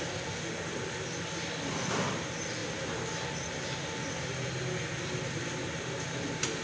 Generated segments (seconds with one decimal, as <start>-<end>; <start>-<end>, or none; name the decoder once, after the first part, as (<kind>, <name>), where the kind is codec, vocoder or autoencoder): none